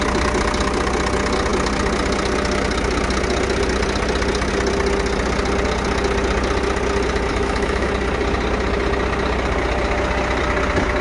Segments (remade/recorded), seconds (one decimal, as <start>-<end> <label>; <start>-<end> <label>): 0.0-7.3 recorded; 7.3-7.9 remade; 7.9-11.0 recorded

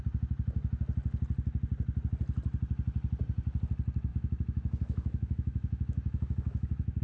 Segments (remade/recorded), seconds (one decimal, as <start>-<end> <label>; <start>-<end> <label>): 0.0-4.1 recorded; 4.1-7.0 remade

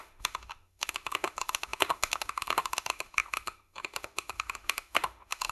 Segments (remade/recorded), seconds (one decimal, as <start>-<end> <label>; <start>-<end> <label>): 0.0-5.5 remade

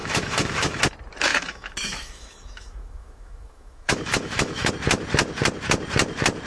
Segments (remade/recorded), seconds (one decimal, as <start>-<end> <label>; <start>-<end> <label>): 0.0-0.8 remade; 0.8-1.3 recorded; 1.3-4.7 remade; 4.7-6.5 recorded

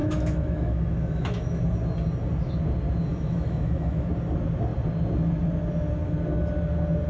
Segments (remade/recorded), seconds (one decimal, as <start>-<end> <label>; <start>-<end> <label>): 0.0-1.6 remade; 1.6-3.1 recorded; 3.1-4.1 remade; 4.1-7.1 recorded

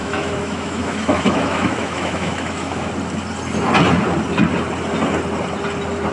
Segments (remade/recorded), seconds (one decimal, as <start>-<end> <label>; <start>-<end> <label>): 0.0-2.9 remade; 2.9-6.1 recorded

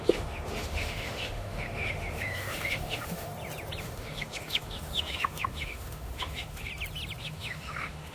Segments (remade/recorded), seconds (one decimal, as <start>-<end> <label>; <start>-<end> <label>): 0.0-3.3 remade; 3.3-3.8 recorded; 3.8-6.7 remade; 6.7-7.2 recorded; 7.2-8.1 remade

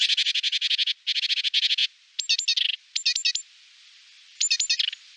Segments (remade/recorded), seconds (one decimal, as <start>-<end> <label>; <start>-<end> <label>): 0.0-5.2 recorded